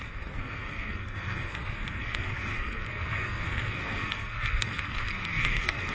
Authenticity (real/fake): fake